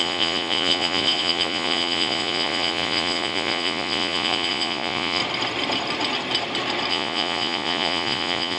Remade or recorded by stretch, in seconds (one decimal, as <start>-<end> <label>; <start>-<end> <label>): 0.0-5.2 remade; 5.2-6.9 recorded; 6.9-8.6 remade